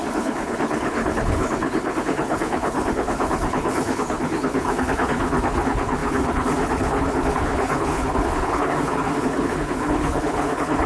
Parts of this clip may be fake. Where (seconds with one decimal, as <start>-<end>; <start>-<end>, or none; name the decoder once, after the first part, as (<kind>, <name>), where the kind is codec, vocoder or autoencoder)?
0.0-10.9 (codec, HILCodec)